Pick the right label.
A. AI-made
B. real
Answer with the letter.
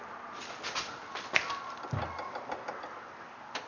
B